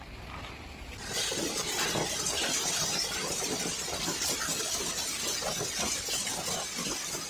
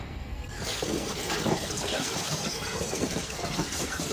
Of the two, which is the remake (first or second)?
second